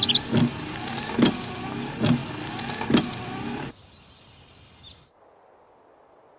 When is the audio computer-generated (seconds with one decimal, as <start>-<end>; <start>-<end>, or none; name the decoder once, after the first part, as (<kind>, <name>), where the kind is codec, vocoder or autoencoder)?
none

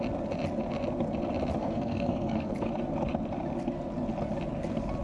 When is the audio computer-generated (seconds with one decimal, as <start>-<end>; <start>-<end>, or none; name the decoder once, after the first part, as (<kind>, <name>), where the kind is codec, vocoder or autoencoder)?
1.6-2.7 (codec, SNAC)

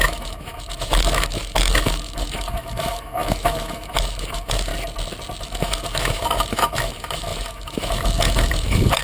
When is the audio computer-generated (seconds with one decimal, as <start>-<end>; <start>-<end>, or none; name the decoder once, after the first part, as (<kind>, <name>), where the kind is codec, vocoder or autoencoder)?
0.0-4.7 (autoencoder, DAC-VAE); 5.4-9.0

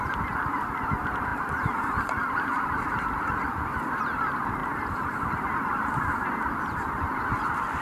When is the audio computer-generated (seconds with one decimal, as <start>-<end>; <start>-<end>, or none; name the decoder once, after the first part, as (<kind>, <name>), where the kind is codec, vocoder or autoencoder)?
1.3-4.0 (vocoder, BigVGAN v2); 4.6-5.9

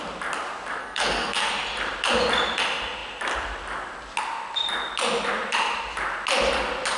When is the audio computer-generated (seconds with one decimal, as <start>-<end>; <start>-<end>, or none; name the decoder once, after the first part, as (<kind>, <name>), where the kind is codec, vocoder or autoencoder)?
0.8-1.5 (codec, SNAC)